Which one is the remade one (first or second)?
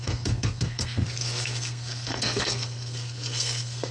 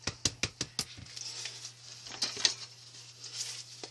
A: first